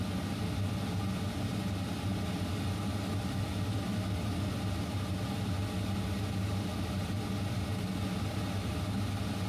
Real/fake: real